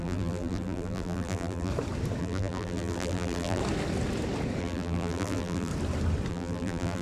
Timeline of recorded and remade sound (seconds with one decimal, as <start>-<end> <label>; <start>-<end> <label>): 0.0-1.7 remade; 1.7-2.2 recorded; 2.2-3.6 remade; 3.6-4.6 recorded; 4.6-5.7 remade; 5.7-6.3 recorded; 6.3-7.0 remade